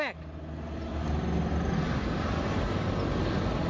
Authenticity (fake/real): real